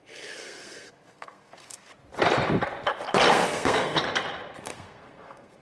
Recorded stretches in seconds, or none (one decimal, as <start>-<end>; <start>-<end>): 1.9-3.3; 4.0-4.6